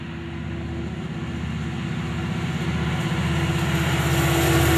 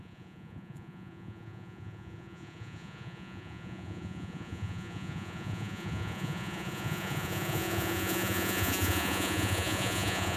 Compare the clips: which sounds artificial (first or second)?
second